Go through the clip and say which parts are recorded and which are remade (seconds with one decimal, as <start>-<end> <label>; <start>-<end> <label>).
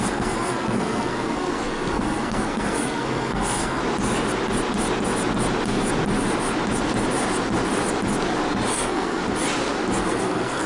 0.0-3.8 remade; 3.8-8.7 recorded; 8.7-9.2 remade; 9.2-10.0 recorded; 10.0-10.7 remade